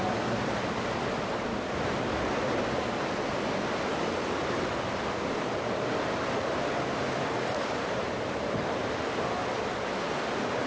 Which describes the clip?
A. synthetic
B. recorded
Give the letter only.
A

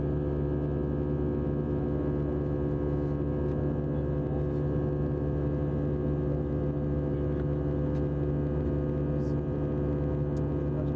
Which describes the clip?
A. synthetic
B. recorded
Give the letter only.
B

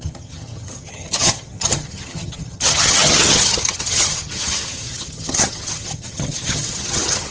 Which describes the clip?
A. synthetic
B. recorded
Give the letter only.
A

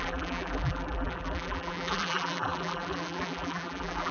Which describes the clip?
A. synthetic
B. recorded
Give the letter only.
A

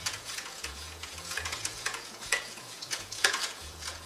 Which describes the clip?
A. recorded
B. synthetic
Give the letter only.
B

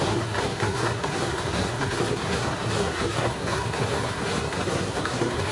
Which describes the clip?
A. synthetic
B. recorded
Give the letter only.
A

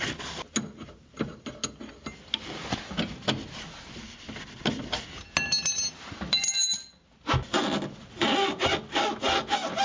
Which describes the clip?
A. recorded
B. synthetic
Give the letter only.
A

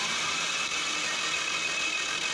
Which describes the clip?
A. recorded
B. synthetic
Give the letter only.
A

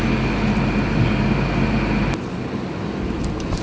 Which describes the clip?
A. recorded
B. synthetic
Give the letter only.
A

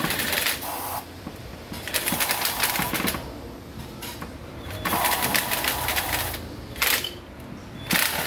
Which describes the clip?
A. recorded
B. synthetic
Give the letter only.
B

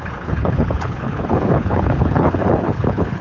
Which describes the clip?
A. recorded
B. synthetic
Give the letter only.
B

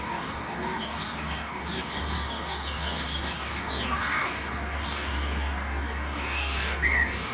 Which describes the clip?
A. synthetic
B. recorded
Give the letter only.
A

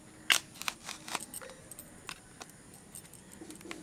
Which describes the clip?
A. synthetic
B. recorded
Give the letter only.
B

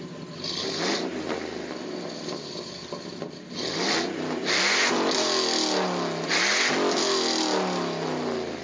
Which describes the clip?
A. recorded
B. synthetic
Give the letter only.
A